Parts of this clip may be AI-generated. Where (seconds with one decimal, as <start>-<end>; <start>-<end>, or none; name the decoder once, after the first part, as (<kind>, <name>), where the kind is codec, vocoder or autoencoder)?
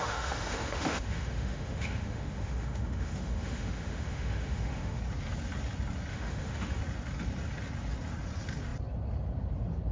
0.0-5.0 (autoencoder, DAC-VAE); 6.1-6.8